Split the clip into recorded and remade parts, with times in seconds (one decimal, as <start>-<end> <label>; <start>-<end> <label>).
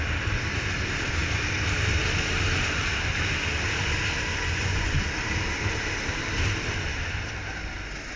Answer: 0.0-4.3 recorded; 4.3-5.0 remade; 5.0-8.2 recorded